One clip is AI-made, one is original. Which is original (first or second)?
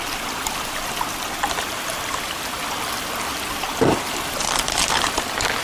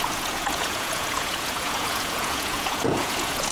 first